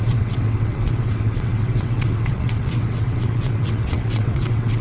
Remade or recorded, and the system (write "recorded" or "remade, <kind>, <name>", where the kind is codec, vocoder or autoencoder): remade, vocoder, WaveNeXt